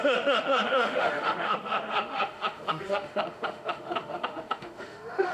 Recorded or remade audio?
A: remade